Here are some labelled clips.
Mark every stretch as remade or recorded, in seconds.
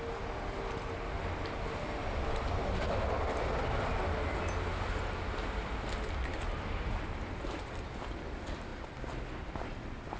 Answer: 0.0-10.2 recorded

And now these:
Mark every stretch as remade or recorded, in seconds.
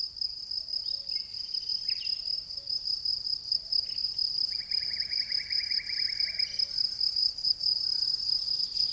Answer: 0.0-3.1 recorded; 3.1-6.2 remade; 6.2-7.2 recorded; 7.2-8.1 remade; 8.1-8.9 recorded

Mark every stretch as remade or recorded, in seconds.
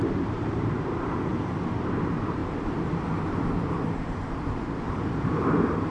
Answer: 0.0-1.3 remade; 1.3-2.0 recorded; 2.0-2.4 remade; 2.4-4.9 recorded; 4.9-5.9 remade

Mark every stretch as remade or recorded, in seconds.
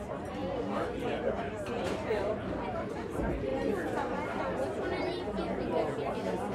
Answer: 0.0-0.4 remade; 0.4-1.4 recorded; 1.4-3.5 remade; 3.5-4.4 recorded; 4.4-6.5 remade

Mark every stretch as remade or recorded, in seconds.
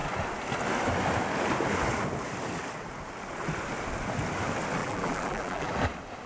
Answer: 0.0-4.8 recorded; 4.8-5.7 remade; 5.7-6.3 recorded